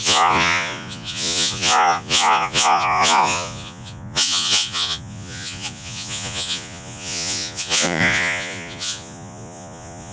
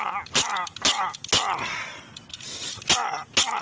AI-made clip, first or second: first